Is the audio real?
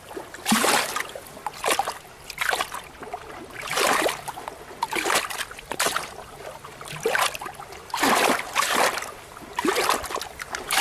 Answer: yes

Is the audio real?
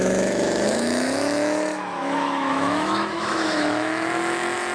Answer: no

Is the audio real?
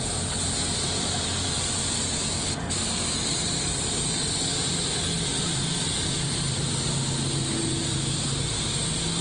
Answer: yes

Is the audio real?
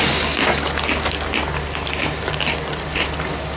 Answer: yes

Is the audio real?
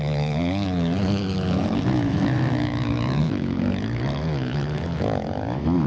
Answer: no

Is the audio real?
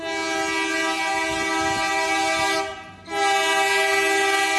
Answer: yes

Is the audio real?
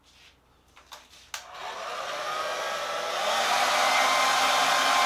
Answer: yes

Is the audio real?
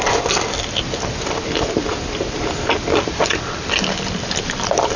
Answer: yes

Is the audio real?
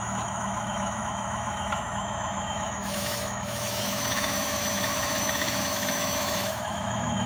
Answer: no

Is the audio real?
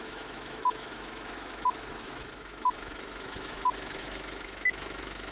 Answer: no